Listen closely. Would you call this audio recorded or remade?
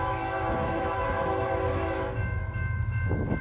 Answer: remade